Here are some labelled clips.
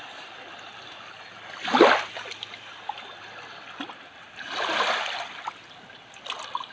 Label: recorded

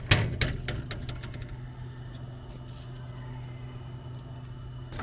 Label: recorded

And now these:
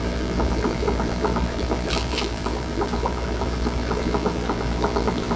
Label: remade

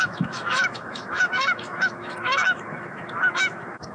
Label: remade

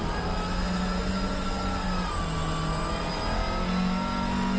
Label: recorded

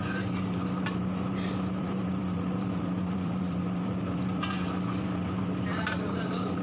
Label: remade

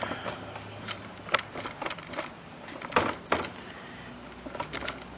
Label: recorded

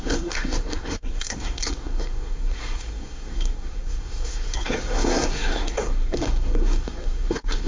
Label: remade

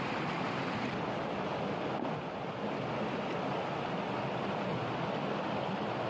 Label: recorded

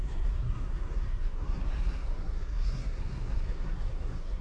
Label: remade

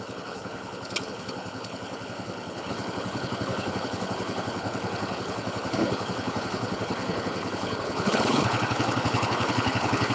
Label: remade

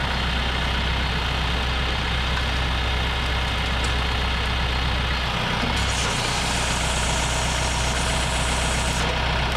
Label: recorded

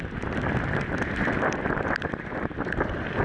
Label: remade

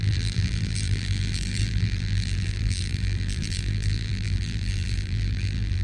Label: remade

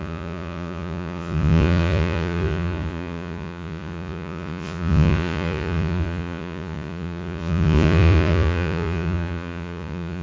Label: remade